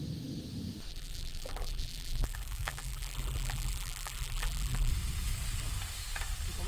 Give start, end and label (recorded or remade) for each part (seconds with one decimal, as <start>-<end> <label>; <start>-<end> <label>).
0.0-0.9 recorded; 0.9-4.9 remade; 4.9-6.7 recorded